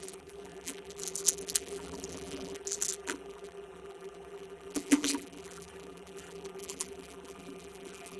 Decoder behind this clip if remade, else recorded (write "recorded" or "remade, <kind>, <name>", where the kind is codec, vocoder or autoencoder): remade, vocoder, BigVGAN v2